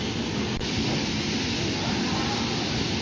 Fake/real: real